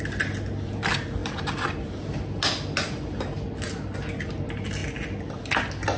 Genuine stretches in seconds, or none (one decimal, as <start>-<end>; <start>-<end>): 0.0-6.0